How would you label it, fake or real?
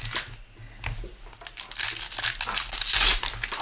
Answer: real